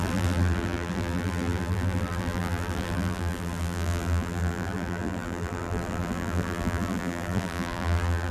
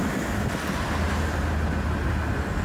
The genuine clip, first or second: second